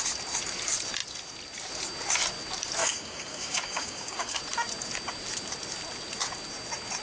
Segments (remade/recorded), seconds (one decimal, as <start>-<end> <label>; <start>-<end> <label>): 0.0-2.8 recorded; 2.8-4.4 remade; 4.4-7.0 recorded